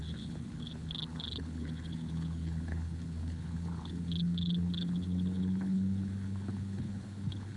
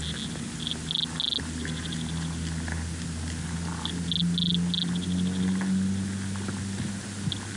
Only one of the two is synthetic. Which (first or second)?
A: first